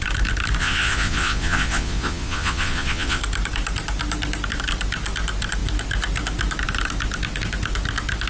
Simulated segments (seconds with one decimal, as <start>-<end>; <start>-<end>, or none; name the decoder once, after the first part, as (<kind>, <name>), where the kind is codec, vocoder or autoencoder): 0.6-3.2 (vocoder, Vocos)